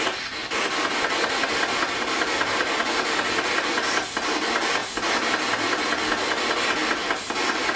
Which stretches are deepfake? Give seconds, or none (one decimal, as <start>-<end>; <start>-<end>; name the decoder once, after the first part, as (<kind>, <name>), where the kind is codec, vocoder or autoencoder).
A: none